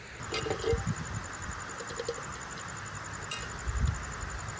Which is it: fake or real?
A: real